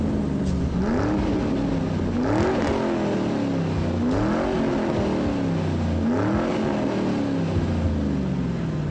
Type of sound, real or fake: real